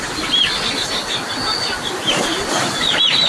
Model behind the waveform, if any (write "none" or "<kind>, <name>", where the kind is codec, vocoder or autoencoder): none